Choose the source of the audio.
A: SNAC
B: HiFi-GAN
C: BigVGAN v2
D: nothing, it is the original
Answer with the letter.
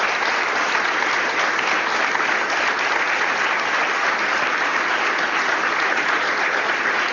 D